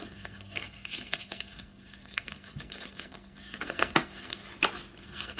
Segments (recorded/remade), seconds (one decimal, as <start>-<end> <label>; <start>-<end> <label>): 0.0-4.4 remade; 4.4-5.0 recorded; 5.0-5.4 remade